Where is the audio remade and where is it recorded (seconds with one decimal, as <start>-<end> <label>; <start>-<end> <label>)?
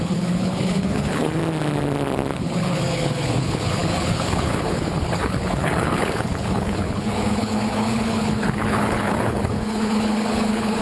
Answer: 0.0-1.4 remade; 1.4-2.4 recorded; 2.4-10.8 remade